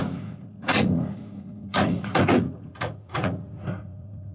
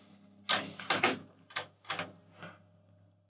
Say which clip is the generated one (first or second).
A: first